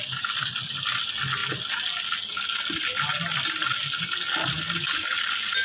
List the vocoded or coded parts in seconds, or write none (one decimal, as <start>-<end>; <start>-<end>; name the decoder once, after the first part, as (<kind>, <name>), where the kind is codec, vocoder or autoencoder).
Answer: none